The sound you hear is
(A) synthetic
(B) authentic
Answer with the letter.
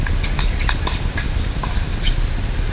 B